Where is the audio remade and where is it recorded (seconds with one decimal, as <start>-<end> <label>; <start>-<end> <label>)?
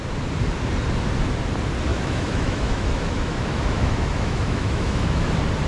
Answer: 0.0-1.9 recorded; 1.9-5.3 remade; 5.3-5.7 recorded